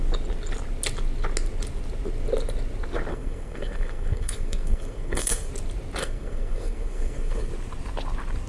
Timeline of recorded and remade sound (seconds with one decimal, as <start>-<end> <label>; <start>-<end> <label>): 0.0-3.1 recorded; 3.1-5.5 remade; 5.5-6.0 recorded; 6.0-7.5 remade; 7.5-8.5 recorded